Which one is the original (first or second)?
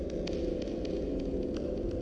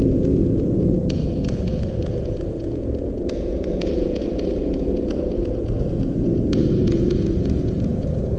first